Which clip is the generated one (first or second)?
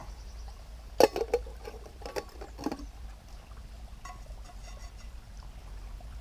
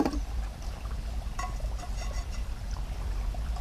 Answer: second